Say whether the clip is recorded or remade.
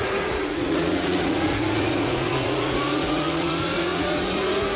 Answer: remade